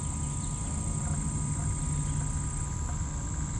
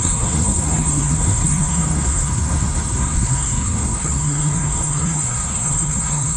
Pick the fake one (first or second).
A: second